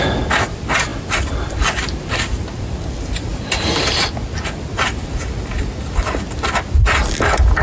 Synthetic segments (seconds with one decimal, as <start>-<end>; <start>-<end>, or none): none